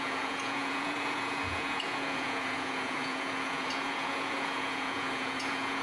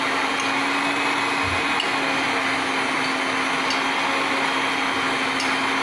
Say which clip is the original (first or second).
second